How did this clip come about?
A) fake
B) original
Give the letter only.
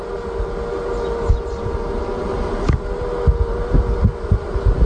B